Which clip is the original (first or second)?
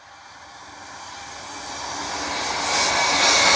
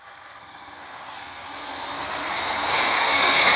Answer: first